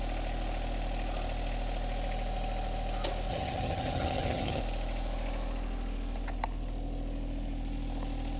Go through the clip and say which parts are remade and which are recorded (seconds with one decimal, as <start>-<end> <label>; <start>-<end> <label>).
0.0-3.3 recorded; 3.3-4.6 remade; 4.6-8.4 recorded